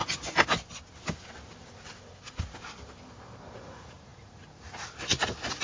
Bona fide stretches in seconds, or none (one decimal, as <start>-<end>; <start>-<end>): 0.0-3.4